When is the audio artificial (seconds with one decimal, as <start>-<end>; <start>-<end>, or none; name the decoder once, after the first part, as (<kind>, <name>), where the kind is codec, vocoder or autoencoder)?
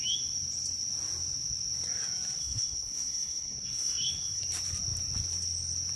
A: 2.4-4.4 (codec, SNAC)